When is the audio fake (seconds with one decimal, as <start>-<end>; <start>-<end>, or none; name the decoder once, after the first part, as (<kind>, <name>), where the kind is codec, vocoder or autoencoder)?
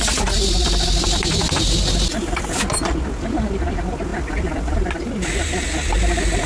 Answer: none